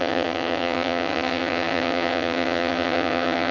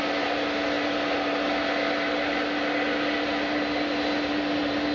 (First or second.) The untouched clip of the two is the second